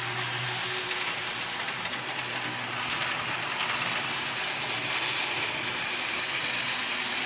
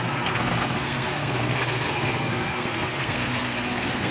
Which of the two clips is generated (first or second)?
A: second